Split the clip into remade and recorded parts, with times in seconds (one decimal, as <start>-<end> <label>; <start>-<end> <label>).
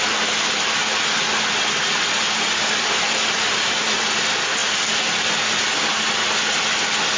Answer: 0.0-7.2 recorded